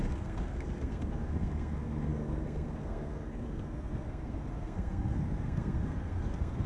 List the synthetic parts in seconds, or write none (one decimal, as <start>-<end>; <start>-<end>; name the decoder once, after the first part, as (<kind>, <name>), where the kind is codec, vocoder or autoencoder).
0.0-6.7 (codec, SNAC)